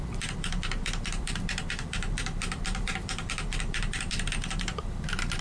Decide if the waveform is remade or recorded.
remade